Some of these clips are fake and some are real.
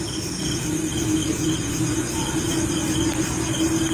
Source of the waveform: real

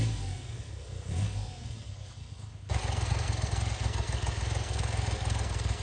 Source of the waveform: fake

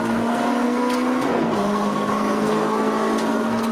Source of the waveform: fake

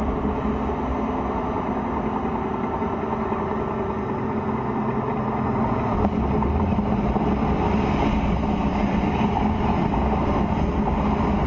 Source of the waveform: real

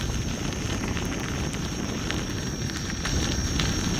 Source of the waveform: real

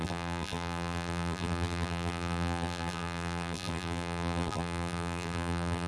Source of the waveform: fake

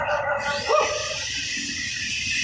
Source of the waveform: real